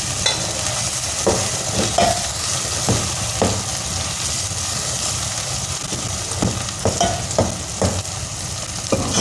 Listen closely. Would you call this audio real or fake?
real